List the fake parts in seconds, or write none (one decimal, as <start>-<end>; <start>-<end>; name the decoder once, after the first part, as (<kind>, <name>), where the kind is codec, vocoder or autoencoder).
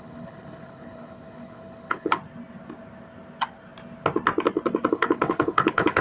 0.0-2.2 (codec, HILCodec); 4.9-6.0